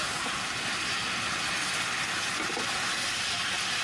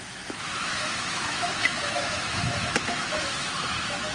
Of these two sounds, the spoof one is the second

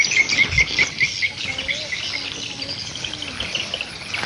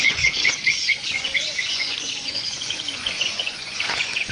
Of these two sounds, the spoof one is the second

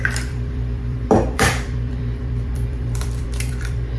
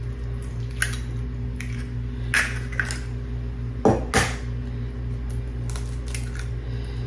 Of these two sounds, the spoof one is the first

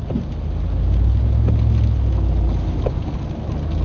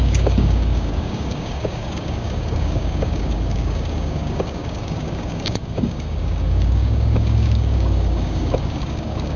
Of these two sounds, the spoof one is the second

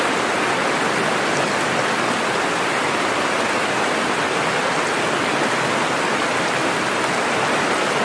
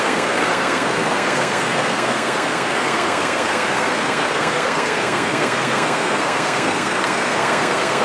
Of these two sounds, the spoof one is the second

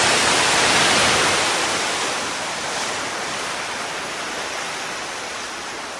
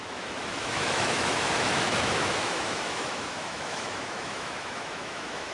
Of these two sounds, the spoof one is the second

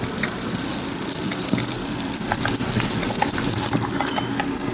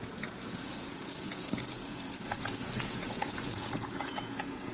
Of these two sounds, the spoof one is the second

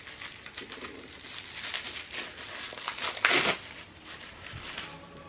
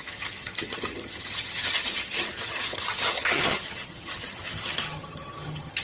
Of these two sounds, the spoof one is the second